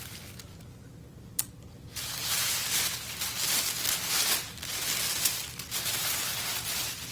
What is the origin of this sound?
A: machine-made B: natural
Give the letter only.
B